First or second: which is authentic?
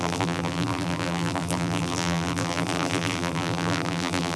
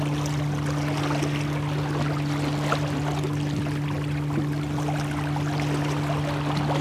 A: second